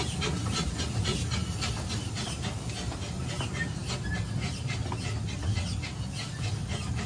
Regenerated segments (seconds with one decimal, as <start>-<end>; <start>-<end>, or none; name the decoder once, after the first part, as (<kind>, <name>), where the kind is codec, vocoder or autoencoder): none